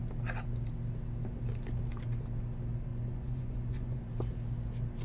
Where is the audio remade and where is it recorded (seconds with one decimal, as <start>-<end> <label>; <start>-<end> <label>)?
0.0-2.9 recorded; 2.9-4.0 remade; 4.0-5.0 recorded